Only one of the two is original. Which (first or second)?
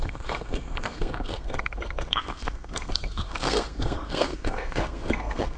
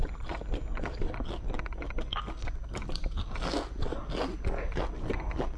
second